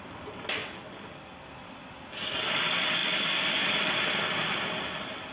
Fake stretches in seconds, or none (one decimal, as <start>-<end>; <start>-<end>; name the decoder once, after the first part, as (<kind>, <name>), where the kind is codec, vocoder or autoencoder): none